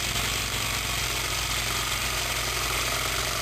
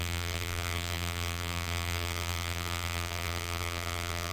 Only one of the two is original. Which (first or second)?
first